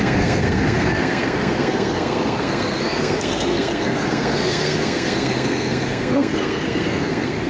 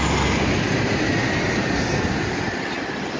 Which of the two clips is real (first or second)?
second